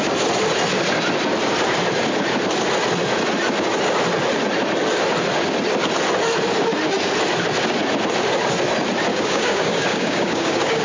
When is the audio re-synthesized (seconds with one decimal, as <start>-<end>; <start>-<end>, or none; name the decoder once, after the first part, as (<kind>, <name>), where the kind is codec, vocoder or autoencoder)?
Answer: 9.1-10.8 (codec, DAC)